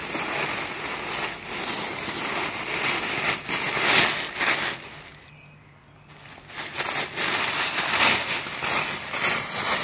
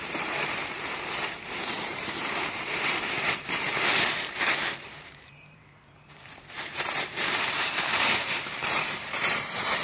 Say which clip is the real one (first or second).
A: first